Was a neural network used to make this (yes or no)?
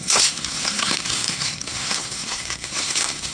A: yes